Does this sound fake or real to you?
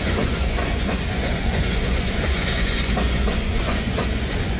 fake